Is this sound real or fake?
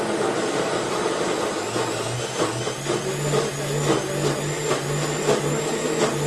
real